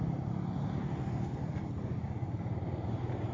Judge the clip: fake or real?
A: real